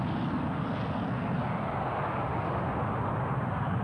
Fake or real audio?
real